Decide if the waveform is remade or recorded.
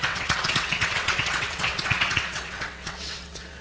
remade